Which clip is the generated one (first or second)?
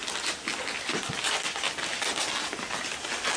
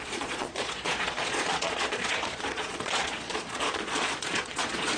second